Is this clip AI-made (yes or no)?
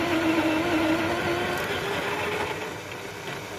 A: no